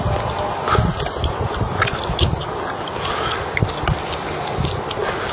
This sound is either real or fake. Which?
real